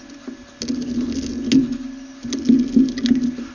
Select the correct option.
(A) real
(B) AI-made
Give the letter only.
A